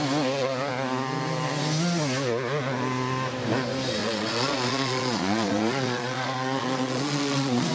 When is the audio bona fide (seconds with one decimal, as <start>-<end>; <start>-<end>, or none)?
0.0-4.0